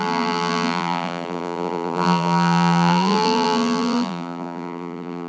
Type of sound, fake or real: fake